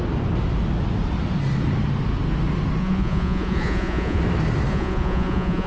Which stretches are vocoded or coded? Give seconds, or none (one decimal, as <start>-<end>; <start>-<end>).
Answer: 2.8-4.2; 4.7-5.7